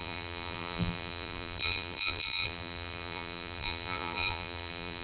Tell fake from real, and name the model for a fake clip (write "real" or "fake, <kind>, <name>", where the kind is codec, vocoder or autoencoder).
fake, vocoder, BigVGAN v2